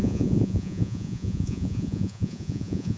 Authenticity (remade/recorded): remade